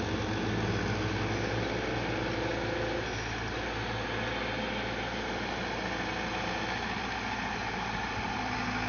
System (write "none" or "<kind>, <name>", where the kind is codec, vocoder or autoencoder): none